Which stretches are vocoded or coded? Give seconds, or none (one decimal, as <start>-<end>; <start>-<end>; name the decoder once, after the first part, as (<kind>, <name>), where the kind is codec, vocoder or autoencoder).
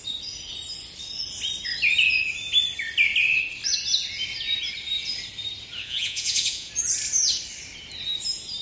5.8-6.7 (vocoder, Vocos)